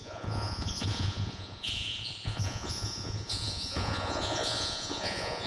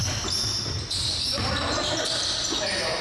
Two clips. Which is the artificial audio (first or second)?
first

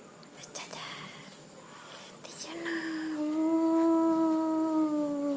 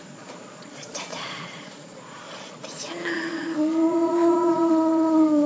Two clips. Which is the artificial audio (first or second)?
second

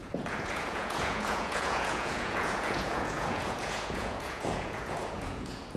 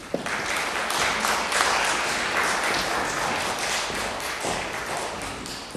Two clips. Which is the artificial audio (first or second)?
first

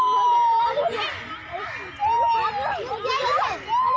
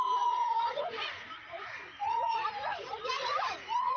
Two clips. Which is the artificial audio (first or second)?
second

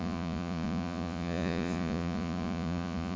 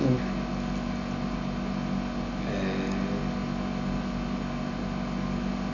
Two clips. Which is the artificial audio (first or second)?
first